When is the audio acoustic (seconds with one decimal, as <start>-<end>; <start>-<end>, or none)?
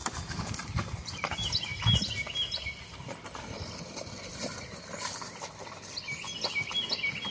0.0-7.3